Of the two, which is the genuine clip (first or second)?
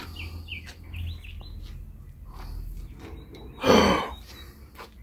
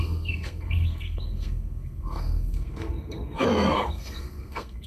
first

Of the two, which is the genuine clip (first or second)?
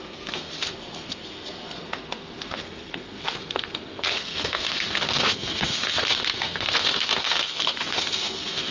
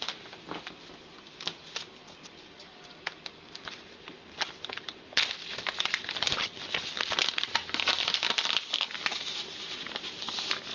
second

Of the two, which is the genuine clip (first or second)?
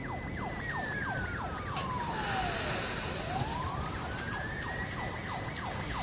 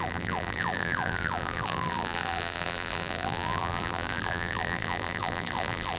first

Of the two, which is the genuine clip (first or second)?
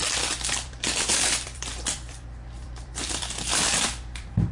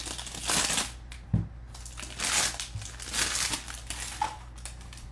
second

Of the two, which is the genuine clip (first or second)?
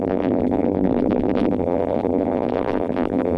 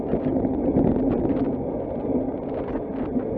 second